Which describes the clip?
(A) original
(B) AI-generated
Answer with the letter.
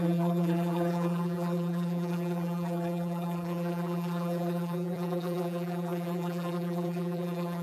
B